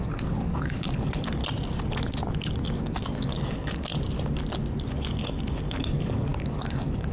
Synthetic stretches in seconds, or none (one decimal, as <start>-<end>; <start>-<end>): 0.0-1.4; 2.8-3.9; 5.8-7.1